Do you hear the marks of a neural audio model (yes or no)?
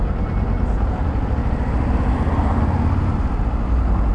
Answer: no